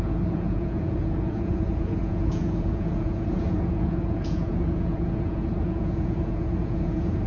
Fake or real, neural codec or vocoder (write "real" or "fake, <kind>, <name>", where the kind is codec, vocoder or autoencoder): fake, vocoder, Vocos